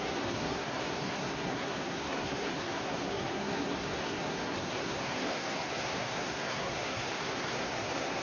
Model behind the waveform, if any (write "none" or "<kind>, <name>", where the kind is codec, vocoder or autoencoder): codec, SNAC